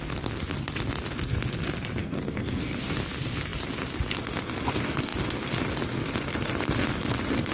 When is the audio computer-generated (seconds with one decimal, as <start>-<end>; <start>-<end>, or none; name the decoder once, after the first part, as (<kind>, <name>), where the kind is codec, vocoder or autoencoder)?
2.0-2.8 (codec, SNAC)

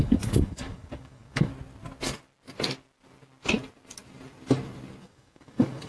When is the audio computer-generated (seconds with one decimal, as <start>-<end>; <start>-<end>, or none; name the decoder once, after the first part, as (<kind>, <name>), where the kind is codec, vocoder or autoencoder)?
0.0-1.5 (codec, DAC); 5.0-5.9

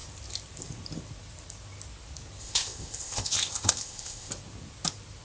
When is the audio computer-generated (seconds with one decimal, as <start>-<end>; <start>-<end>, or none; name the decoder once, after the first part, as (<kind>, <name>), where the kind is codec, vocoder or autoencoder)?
2.4-4.3 (codec, ZipCodec)

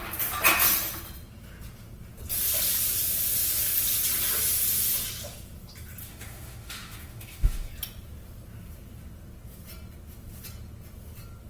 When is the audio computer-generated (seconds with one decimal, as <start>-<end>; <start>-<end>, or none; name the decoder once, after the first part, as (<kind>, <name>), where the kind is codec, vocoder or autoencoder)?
6.0-7.7 (autoencoder, DAC-VAE)

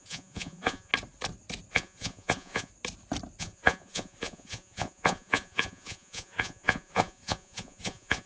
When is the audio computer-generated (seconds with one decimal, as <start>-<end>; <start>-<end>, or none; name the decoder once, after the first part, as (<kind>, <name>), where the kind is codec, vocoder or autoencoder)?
0.0-0.9 (vocoder, Vocos); 1.7-2.7; 3.4-8.3

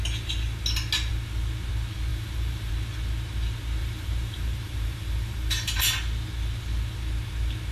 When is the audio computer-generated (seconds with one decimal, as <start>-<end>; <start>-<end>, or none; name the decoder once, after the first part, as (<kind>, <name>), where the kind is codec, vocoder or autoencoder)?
2.1-2.7 (vocoder, BigVGAN v2); 3.8-5.8

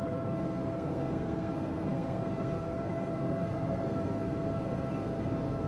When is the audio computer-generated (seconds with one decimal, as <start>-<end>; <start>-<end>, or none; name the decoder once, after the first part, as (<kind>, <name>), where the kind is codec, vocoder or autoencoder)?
0.0-5.7 (codec, SNAC)

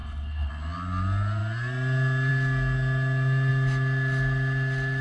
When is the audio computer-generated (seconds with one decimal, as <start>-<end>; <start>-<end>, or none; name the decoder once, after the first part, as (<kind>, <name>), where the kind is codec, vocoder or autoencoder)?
0.0-0.5 (codec, HILCodec)